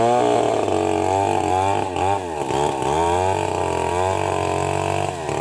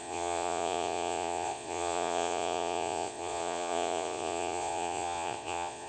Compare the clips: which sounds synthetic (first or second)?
second